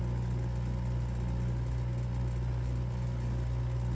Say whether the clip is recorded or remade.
recorded